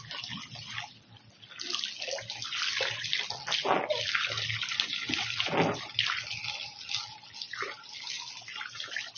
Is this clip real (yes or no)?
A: yes